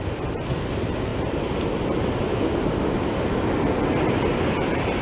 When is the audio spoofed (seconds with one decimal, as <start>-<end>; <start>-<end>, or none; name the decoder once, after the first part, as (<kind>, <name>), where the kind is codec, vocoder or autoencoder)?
none